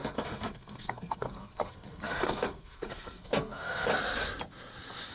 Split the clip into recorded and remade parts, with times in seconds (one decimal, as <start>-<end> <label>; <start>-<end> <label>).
0.0-3.9 remade; 3.9-5.1 recorded